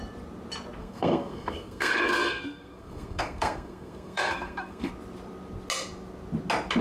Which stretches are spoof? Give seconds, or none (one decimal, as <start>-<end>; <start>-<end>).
0.8-4.9